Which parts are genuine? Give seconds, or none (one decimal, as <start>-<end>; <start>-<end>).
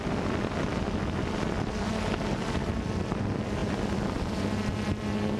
0.0-5.4